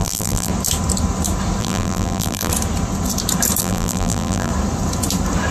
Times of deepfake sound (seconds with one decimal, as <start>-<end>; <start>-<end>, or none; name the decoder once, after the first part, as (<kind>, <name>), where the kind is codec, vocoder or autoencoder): 0.0-0.5 (vocoder, BigVGAN v2); 1.6-2.5; 3.6-4.5